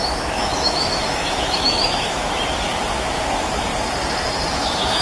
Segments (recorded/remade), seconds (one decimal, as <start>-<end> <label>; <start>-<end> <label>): 0.0-3.7 remade; 3.7-4.5 recorded; 4.5-5.0 remade